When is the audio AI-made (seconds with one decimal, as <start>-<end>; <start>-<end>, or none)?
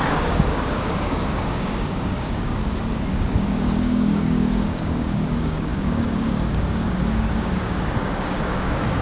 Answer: 0.0-2.6; 3.3-9.0